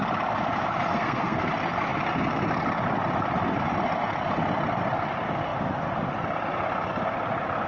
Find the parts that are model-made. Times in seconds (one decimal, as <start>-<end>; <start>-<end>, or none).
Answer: 0.9-1.5